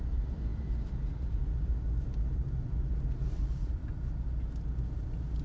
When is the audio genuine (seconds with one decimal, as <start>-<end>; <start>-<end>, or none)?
0.0-5.4

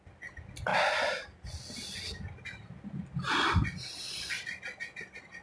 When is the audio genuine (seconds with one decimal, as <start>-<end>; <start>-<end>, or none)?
0.0-5.4

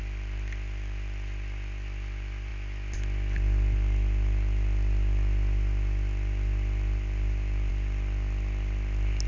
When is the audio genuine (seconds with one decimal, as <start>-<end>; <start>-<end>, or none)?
0.0-9.3

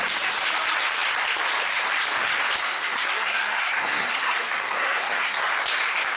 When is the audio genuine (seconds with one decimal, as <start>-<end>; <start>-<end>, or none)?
0.0-2.6; 5.4-6.2

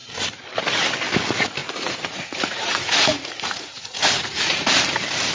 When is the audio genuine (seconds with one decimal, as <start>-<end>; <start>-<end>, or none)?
0.0-1.6; 4.7-5.3

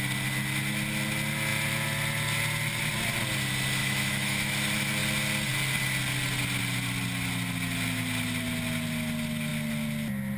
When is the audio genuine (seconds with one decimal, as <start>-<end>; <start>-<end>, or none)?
0.0-3.8; 4.5-10.4

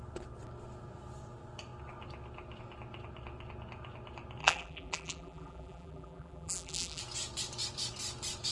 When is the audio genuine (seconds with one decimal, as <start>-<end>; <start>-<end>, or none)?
0.0-4.4; 7.0-8.5